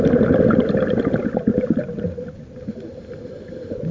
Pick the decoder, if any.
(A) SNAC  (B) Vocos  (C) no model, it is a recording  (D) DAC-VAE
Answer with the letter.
C